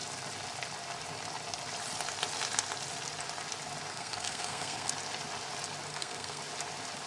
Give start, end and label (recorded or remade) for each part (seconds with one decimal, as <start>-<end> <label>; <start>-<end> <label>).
0.0-3.9 recorded; 3.9-4.9 remade; 4.9-5.9 recorded; 5.9-6.4 remade; 6.4-7.1 recorded